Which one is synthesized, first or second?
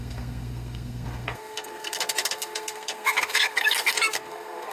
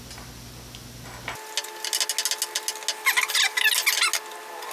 first